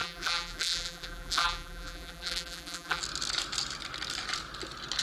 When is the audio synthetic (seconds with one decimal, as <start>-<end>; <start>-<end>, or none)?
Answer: 0.0-3.0